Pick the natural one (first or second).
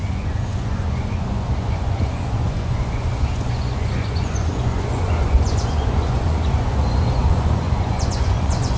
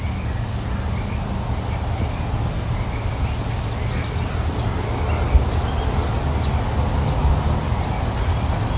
second